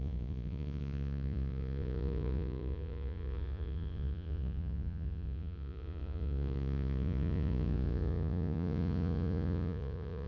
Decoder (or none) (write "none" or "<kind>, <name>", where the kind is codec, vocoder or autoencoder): vocoder, Vocos